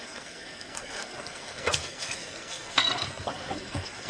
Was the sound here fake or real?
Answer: fake